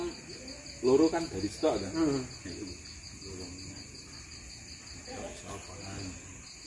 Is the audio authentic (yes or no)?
yes